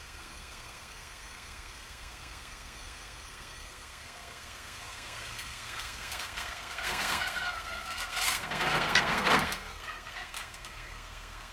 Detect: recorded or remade remade